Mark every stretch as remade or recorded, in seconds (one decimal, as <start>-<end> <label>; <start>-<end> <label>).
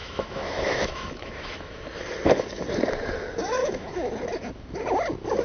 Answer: 0.0-1.8 remade; 1.8-3.6 recorded; 3.6-4.1 remade; 4.1-5.4 recorded